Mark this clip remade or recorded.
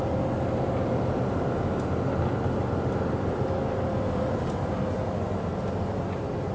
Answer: recorded